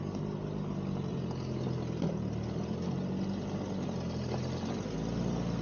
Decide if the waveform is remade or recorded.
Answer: recorded